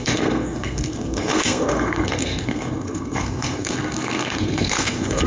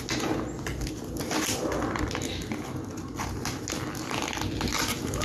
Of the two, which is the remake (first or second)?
first